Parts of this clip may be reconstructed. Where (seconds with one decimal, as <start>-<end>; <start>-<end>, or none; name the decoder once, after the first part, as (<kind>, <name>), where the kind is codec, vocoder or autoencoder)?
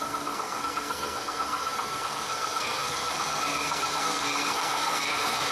0.0-5.5 (codec, SNAC)